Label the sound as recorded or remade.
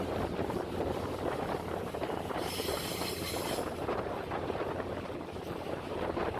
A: remade